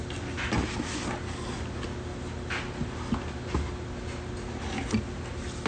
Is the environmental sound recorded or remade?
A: recorded